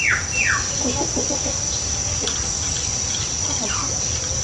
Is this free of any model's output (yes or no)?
yes